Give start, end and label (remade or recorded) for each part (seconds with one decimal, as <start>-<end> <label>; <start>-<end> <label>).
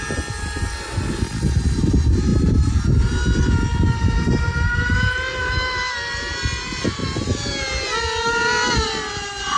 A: 0.0-9.6 recorded